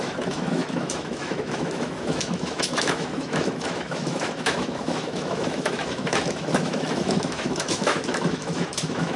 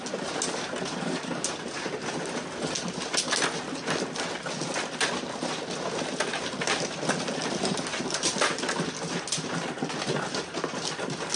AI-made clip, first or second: first